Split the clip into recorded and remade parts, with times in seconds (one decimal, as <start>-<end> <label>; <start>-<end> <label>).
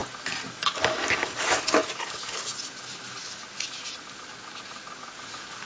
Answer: 0.0-5.7 recorded